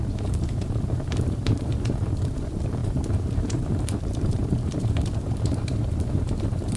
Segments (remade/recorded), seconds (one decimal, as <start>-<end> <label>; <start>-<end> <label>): 0.0-6.8 remade